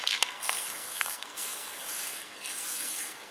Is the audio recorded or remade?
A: remade